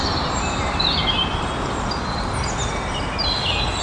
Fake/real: real